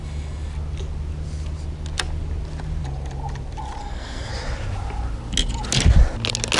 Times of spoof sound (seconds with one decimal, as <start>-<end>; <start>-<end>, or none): 3.8-4.3